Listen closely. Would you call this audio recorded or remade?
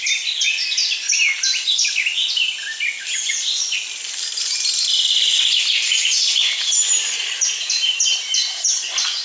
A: recorded